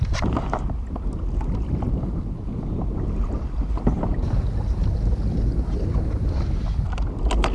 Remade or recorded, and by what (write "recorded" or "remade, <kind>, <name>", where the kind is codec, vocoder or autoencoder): recorded